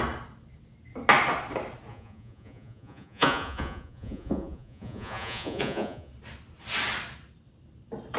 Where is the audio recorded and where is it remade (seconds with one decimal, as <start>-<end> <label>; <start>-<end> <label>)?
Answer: 0.0-1.9 recorded; 1.9-6.1 remade; 6.1-8.2 recorded